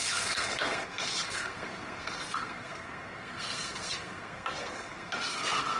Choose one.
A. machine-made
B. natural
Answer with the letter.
A